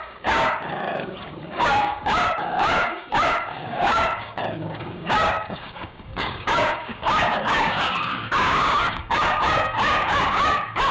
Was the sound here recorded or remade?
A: remade